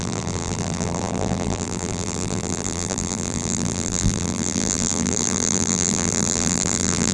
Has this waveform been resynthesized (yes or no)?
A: yes